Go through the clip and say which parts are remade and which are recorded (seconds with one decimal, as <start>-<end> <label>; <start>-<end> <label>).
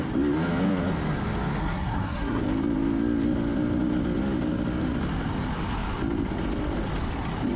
0.0-1.6 recorded; 1.6-2.4 remade; 2.4-7.6 recorded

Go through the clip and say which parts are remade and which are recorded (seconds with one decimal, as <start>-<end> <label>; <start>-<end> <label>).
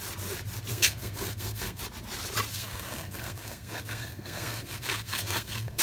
0.0-0.7 recorded; 0.7-1.8 remade; 1.8-2.5 recorded; 2.5-5.8 remade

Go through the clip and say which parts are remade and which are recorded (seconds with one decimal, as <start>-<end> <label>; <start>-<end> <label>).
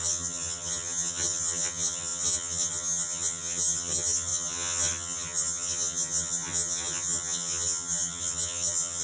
0.0-9.0 remade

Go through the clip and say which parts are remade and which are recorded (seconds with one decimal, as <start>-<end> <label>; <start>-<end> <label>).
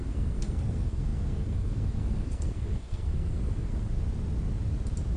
0.0-3.9 remade; 3.9-5.2 recorded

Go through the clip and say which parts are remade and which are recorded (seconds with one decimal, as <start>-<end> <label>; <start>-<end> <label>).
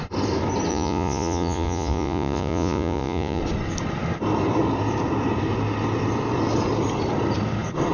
0.0-0.7 recorded; 0.7-3.4 remade; 3.4-7.9 recorded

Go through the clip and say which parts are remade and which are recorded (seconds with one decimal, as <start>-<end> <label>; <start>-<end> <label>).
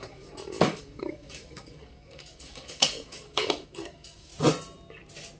0.0-4.3 remade; 4.3-5.4 recorded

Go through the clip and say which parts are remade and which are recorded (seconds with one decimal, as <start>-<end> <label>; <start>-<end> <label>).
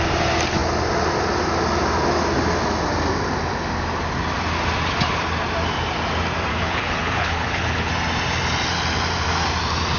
0.0-6.5 recorded; 6.5-7.9 remade; 7.9-10.0 recorded